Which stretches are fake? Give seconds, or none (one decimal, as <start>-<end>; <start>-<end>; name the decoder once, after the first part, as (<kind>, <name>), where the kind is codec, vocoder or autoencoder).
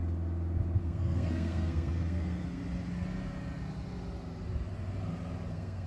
0.8-2.6 (codec, SNAC); 5.5-5.9